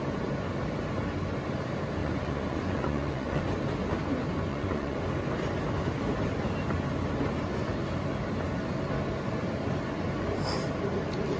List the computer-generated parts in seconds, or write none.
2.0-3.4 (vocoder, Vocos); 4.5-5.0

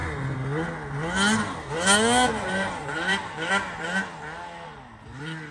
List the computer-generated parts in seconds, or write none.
2.3-3.5 (vocoder, BigVGAN v2)

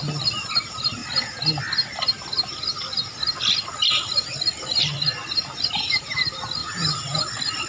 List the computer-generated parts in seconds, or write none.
6.6-7.3 (vocoder, BigVGAN v2)

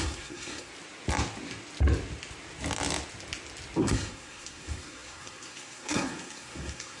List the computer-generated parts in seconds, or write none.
0.0-0.7 (codec, SNAC); 3.8-7.0